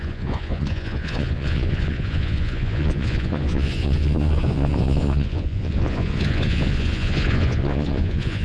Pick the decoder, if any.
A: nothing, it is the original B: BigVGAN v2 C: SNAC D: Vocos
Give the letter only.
D